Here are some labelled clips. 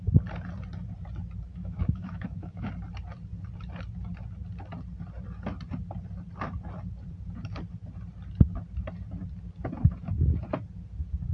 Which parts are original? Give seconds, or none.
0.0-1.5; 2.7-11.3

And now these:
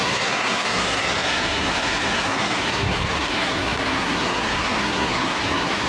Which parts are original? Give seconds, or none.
none